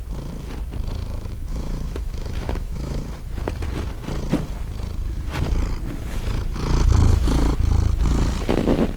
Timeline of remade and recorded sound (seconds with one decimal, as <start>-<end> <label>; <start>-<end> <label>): 0.0-1.0 recorded; 1.0-3.0 remade; 3.0-9.0 recorded